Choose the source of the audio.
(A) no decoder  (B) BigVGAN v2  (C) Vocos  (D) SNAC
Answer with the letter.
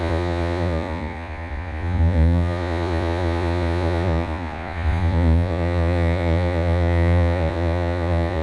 C